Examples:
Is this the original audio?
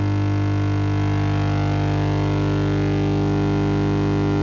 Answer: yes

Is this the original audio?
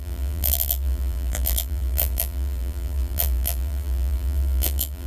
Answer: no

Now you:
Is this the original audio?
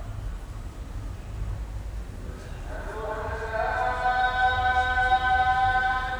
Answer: yes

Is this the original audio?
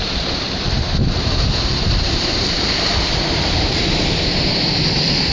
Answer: no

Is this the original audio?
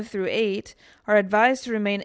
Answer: yes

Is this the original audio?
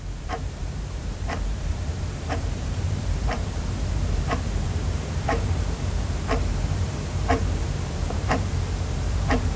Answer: no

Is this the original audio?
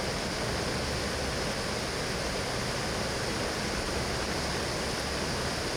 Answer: yes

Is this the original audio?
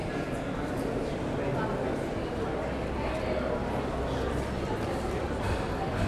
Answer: yes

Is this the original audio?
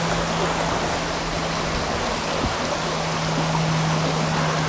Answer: yes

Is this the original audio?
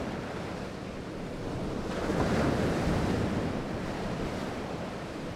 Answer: no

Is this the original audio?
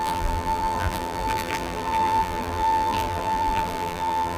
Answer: no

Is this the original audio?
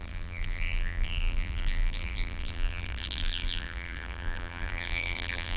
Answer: no